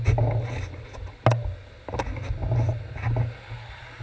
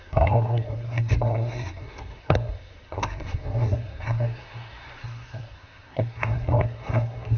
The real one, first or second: first